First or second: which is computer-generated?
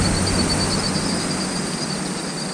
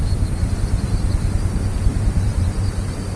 second